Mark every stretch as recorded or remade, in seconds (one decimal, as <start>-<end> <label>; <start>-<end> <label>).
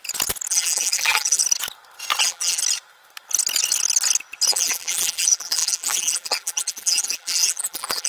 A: 0.0-0.5 recorded; 0.5-1.4 remade; 1.4-2.2 recorded; 2.2-2.6 remade; 2.6-4.5 recorded; 4.5-8.1 remade